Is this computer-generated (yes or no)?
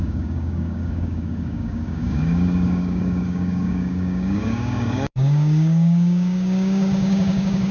yes